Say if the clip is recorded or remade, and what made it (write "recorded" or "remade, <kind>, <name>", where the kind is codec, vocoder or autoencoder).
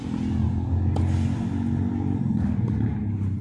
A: recorded